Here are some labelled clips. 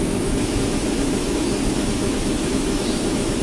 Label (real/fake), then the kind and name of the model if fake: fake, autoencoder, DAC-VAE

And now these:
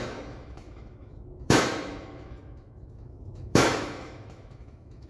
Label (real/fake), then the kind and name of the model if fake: fake, autoencoder, DAC-VAE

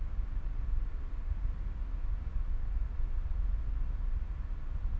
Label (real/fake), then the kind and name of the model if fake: real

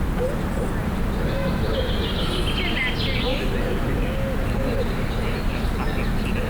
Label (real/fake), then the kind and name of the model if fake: real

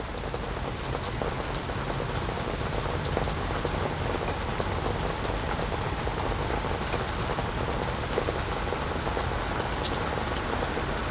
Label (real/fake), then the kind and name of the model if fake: real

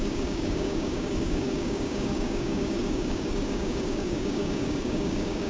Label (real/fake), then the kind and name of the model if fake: fake, codec, DAC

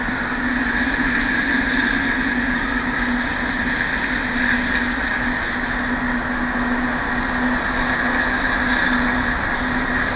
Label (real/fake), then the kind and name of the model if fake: real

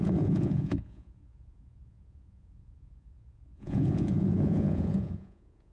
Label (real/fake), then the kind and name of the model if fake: fake, vocoder, Vocos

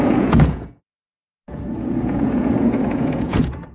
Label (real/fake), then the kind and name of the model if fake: fake, vocoder, Vocos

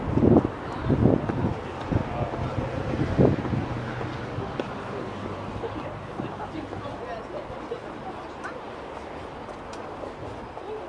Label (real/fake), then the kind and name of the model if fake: real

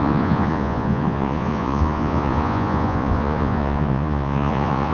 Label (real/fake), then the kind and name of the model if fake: fake, vocoder, Vocos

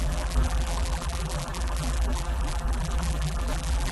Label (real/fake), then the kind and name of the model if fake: fake, vocoder, BigVGAN v2